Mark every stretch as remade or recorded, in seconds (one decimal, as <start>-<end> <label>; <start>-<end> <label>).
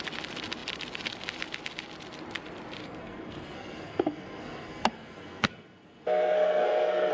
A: 0.0-2.8 recorded; 2.8-7.1 remade